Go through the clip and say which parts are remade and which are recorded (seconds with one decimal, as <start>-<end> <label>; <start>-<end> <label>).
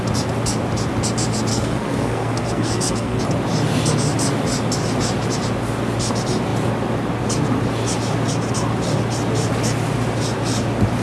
0.0-1.5 recorded; 1.5-3.2 remade; 3.2-11.0 recorded